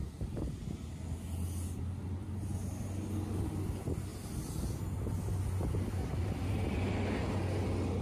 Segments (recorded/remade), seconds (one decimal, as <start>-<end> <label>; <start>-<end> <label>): 0.0-8.0 recorded